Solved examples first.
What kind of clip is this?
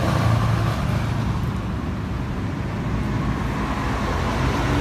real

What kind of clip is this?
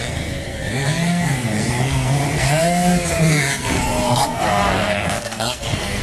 fake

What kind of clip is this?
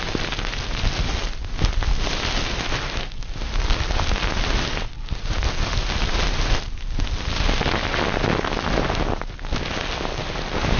real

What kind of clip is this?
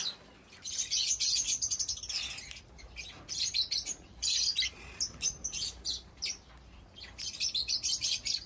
real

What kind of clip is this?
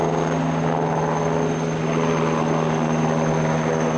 real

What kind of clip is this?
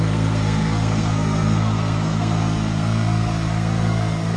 fake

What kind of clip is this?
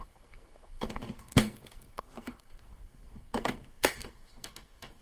fake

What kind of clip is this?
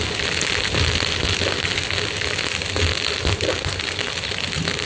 real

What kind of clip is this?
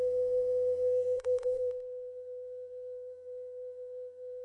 fake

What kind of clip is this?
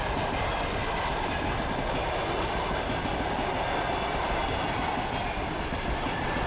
real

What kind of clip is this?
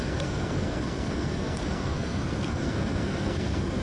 fake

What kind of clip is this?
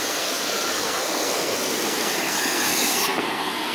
fake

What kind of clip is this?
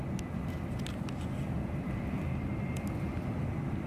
real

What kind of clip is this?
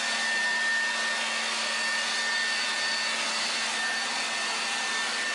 real